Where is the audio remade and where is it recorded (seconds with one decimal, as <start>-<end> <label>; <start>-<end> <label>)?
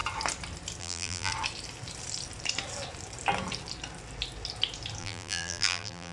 0.0-0.8 recorded; 0.8-1.3 remade; 1.3-5.0 recorded; 5.0-6.1 remade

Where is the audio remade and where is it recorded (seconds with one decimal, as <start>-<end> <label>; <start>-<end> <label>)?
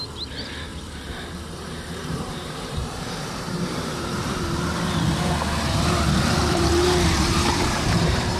0.0-0.7 recorded; 0.7-4.3 remade; 4.3-6.4 recorded; 6.4-8.4 remade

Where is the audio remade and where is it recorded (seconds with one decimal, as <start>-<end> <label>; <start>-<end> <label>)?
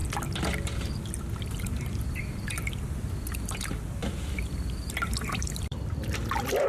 0.0-2.0 recorded; 2.0-6.7 remade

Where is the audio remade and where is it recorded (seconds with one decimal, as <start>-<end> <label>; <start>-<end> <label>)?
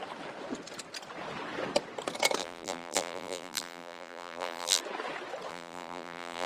0.0-2.4 recorded; 2.4-4.8 remade; 4.8-5.5 recorded; 5.5-6.5 remade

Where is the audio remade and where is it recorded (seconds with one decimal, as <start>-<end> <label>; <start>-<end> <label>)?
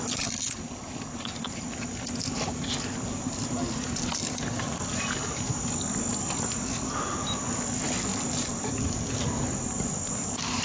0.0-8.1 recorded; 8.1-9.1 remade; 9.1-10.6 recorded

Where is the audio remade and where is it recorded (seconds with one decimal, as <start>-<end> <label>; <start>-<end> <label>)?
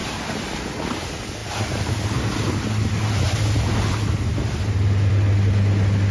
0.0-6.1 recorded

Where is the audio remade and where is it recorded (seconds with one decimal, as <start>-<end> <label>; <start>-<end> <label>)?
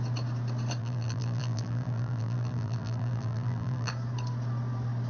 0.0-0.8 recorded; 0.8-3.9 remade; 3.9-5.1 recorded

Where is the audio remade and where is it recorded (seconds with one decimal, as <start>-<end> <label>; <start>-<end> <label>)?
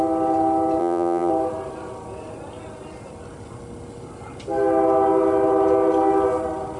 0.0-0.8 recorded; 0.8-1.3 remade; 1.3-6.8 recorded